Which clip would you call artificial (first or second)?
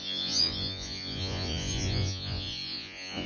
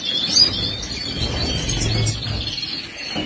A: first